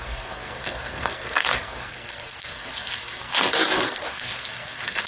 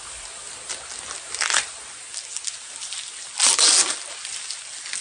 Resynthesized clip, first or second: first